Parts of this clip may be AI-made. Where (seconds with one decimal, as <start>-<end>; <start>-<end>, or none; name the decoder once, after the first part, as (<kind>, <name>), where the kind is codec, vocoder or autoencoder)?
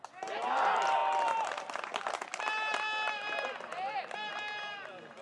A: none